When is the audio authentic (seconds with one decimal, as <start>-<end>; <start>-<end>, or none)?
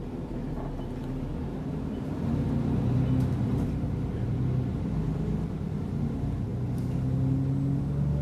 0.4-3.3; 6.5-8.2